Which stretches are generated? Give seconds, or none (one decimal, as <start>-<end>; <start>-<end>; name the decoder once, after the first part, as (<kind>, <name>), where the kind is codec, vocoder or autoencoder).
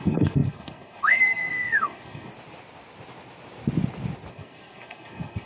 0.0-2.3 (codec, SNAC); 4.3-5.5